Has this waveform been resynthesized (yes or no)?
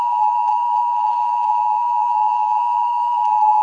yes